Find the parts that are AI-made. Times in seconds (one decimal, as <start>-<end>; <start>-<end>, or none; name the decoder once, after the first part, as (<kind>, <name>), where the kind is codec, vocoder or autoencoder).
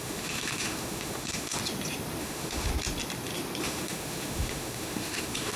0.0-1.6 (autoencoder, DAC-VAE); 2.2-2.7; 3.6-5.6